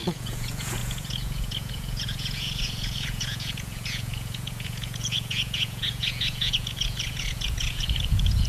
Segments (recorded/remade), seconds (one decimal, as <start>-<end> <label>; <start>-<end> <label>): 0.0-8.5 remade

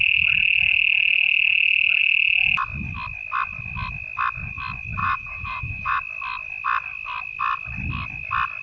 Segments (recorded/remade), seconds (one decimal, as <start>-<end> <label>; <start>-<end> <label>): 0.0-5.0 recorded; 5.0-6.0 remade; 6.0-8.6 recorded

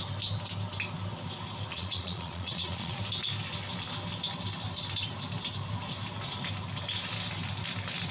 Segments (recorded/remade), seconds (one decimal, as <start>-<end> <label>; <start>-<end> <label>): 0.0-1.7 recorded; 1.7-3.0 remade; 3.0-8.1 recorded

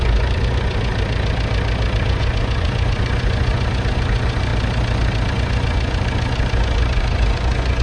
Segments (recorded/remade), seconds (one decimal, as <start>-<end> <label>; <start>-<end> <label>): 0.0-0.9 remade; 0.9-2.0 recorded; 2.0-4.5 remade; 4.5-5.3 recorded; 5.3-7.8 remade

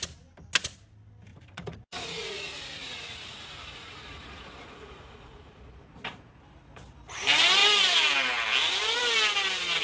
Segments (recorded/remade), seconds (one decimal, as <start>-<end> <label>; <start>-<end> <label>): 0.0-1.3 recorded; 1.3-6.4 remade; 6.4-9.8 recorded

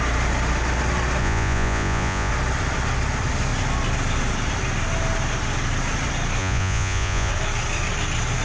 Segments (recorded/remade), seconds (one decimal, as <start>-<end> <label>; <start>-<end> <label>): 0.0-1.2 recorded; 1.2-2.3 remade; 2.3-6.4 recorded; 6.4-7.3 remade; 7.3-8.4 recorded